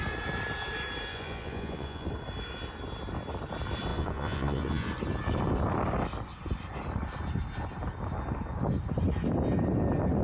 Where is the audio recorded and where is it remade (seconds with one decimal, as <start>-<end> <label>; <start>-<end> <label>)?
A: 0.0-1.1 recorded; 1.1-2.1 remade; 2.1-3.9 recorded; 3.9-4.9 remade; 4.9-10.2 recorded